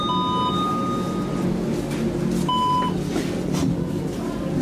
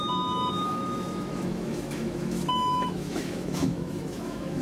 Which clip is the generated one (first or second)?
second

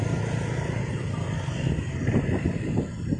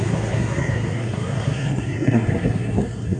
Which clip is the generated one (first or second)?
second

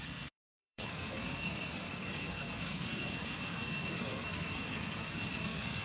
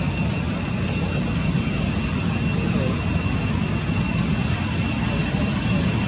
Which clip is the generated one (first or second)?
first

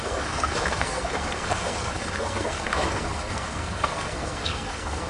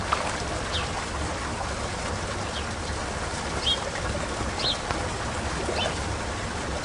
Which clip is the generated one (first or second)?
first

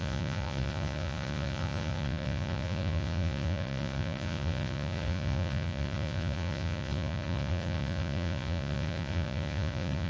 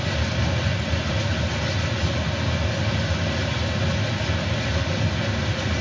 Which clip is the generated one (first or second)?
first